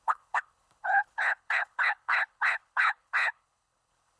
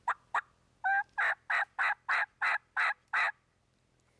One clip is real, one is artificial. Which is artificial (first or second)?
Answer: first